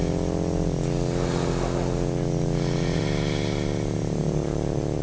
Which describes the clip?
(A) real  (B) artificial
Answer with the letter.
A